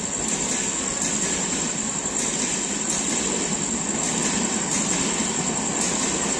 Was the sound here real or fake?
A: real